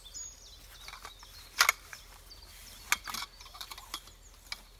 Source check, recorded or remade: recorded